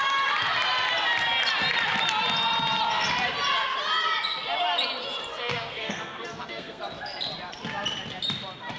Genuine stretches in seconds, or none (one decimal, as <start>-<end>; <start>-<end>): 0.0-5.3; 6.8-8.8